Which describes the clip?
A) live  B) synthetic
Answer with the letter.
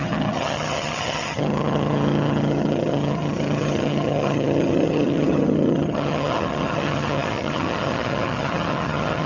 B